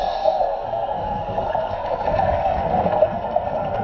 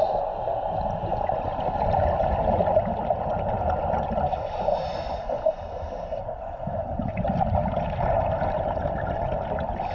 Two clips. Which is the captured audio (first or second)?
second